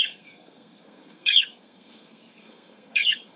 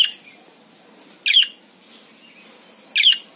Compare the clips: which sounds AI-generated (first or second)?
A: first